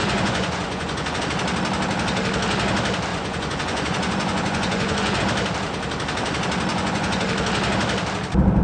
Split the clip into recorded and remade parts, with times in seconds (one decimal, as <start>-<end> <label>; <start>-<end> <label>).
0.0-1.2 remade; 1.2-3.1 recorded; 3.1-5.2 remade; 5.2-6.7 recorded; 6.7-7.2 remade; 7.2-8.6 recorded